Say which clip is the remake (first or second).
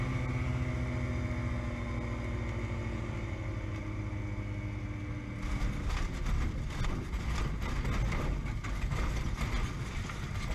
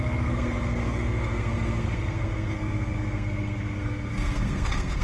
second